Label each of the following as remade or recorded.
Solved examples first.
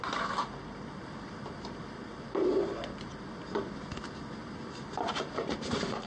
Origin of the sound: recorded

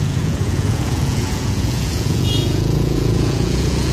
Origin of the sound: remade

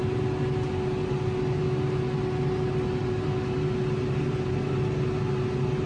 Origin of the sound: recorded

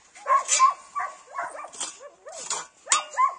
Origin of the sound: recorded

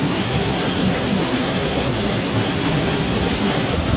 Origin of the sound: remade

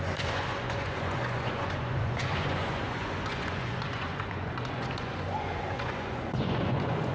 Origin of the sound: remade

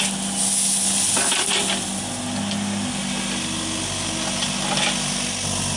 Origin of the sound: recorded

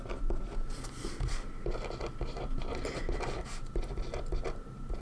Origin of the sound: recorded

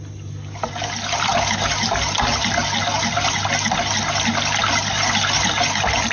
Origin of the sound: recorded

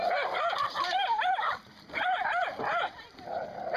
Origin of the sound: remade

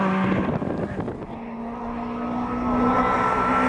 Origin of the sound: recorded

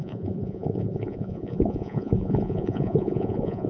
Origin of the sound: remade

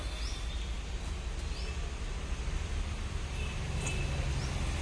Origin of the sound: recorded